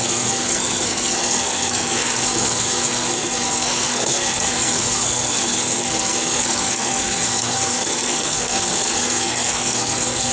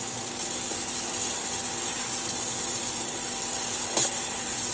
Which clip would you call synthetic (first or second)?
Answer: first